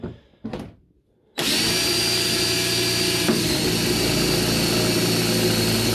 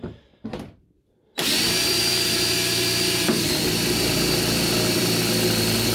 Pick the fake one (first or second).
second